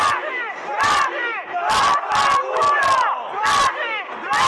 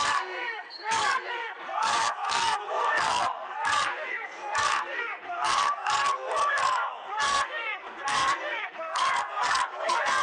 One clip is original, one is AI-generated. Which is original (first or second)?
first